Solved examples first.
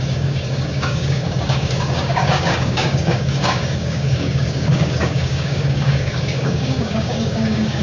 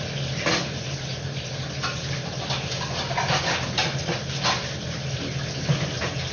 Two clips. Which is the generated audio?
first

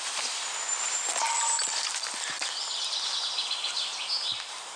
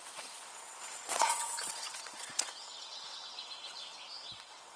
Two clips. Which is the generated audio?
second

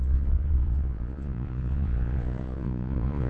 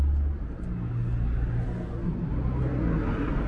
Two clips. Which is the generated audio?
first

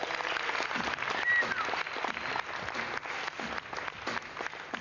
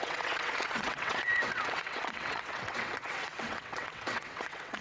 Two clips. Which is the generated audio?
second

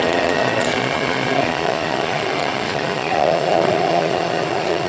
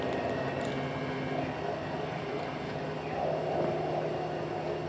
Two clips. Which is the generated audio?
first